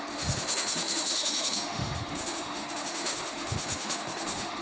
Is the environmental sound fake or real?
fake